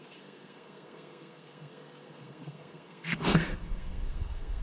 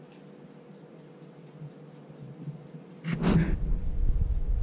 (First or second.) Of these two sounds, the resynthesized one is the first